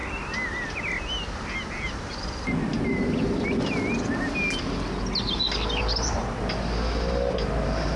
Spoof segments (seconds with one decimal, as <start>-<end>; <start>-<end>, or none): none